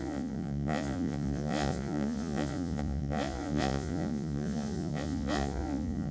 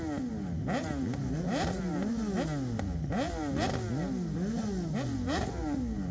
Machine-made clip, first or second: first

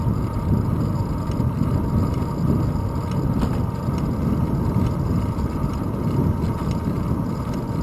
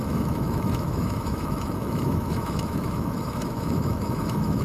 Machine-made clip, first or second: second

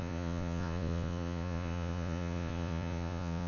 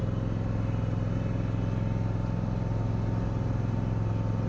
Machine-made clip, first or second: first